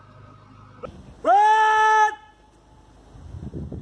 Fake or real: real